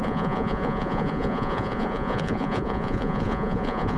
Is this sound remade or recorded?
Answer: remade